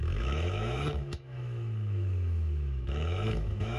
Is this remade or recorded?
remade